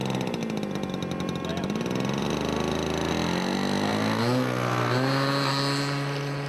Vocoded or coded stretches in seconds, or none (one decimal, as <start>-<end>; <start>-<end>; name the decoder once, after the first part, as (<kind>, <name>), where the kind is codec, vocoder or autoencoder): none

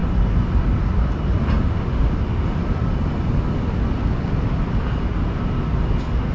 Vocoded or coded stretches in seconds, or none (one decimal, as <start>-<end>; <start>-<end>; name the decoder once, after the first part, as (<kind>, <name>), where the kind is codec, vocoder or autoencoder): 1.6-2.6 (autoencoder, DAC-VAE)

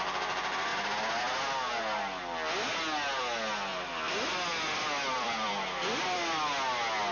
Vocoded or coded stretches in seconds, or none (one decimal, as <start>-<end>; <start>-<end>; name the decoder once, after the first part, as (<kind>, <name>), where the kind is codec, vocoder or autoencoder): 3.7-6.5 (vocoder, BigVGAN v2)

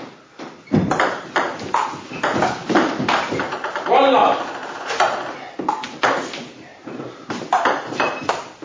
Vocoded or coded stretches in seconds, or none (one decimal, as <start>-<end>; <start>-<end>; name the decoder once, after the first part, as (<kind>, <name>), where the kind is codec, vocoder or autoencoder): 2.6-3.9 (vocoder, BigVGAN v2); 6.7-8.2

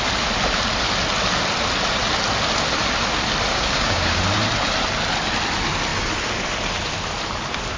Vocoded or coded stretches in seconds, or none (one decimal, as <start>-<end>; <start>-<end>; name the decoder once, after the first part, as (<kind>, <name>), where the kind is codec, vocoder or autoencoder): 3.5-4.2 (codec, DAC)

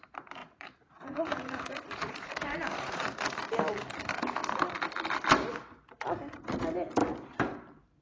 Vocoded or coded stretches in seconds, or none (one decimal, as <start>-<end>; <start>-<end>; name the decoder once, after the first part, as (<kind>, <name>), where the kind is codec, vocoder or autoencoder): 0.4-3.0 (vocoder, Vocos)